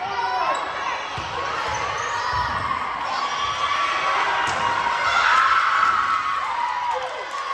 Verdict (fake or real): real